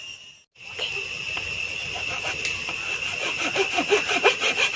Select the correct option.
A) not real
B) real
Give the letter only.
B